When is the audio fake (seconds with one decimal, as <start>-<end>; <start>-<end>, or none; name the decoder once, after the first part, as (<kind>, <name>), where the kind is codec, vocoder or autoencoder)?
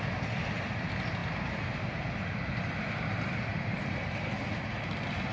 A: 3.5-4.0 (vocoder, BigVGAN v2)